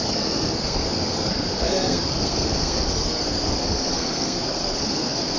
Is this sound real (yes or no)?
no